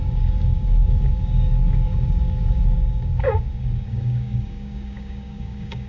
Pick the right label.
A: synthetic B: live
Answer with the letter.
A